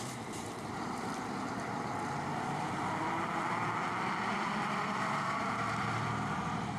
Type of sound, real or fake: fake